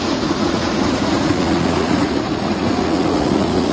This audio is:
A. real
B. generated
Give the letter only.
B